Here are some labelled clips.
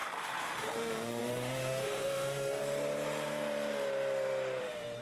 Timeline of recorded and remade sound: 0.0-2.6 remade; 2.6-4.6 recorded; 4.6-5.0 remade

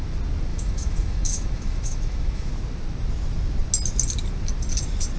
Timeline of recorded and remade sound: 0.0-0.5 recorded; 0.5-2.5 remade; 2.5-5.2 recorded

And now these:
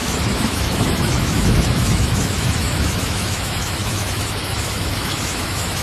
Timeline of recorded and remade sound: 0.0-5.8 remade